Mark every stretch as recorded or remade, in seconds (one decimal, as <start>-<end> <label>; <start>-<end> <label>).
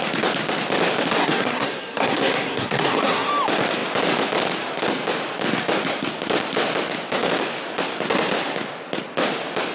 0.0-1.2 recorded; 1.2-3.3 remade; 3.3-9.7 recorded